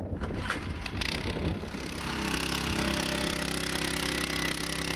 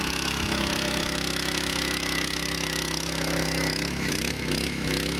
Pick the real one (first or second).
first